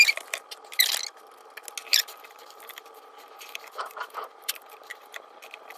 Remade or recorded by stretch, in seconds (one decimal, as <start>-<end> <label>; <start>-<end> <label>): 0.0-1.8 recorded; 1.8-5.1 remade; 5.1-5.8 recorded

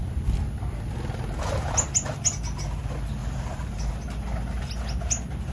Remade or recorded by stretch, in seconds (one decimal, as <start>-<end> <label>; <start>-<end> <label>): 0.0-3.2 recorded; 3.2-3.9 remade; 3.9-5.5 recorded

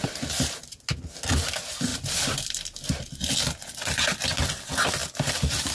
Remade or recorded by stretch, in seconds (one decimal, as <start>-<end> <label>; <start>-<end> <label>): 0.0-1.9 recorded; 1.9-3.1 remade; 3.1-3.7 recorded; 3.7-4.4 remade; 4.4-5.0 recorded; 5.0-5.7 remade

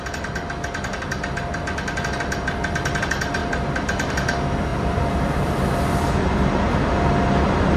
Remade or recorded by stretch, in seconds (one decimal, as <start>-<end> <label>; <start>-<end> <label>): 0.0-4.7 recorded; 4.7-5.9 remade; 5.9-7.8 recorded

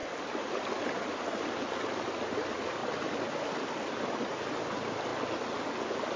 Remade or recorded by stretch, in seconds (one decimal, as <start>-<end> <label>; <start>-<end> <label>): 0.0-1.2 remade; 1.2-6.2 recorded

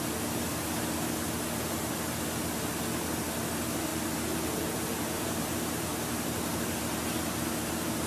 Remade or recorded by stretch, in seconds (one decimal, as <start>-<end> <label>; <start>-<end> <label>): 0.0-3.9 recorded; 3.9-8.1 remade